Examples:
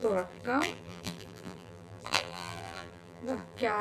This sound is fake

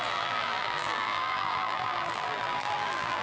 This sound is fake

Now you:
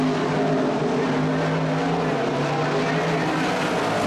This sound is real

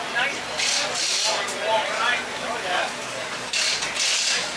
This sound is real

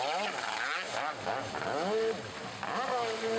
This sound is real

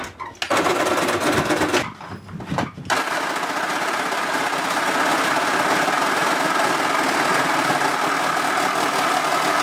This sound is real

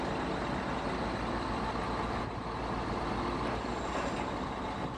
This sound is real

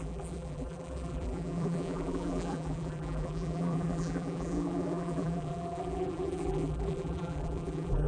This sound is fake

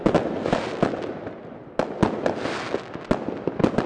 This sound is real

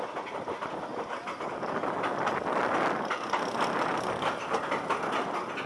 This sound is real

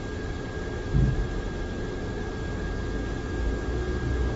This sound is real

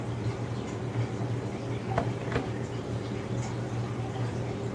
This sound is fake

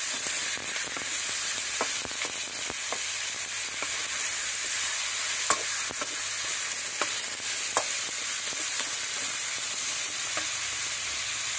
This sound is real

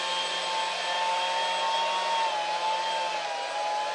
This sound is real